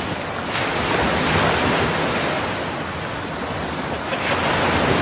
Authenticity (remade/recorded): recorded